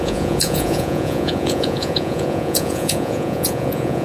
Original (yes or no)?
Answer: no